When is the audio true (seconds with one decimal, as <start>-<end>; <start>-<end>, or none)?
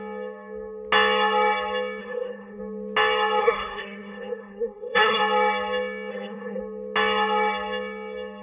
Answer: 0.0-2.0; 2.6-3.4; 5.2-6.1; 6.6-8.4